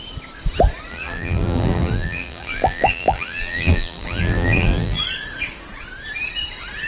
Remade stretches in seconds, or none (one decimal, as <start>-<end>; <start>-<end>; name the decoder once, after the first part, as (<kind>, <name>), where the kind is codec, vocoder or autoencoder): 0.9-5.0 (vocoder, BigVGAN v2)